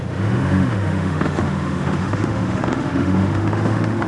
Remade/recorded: remade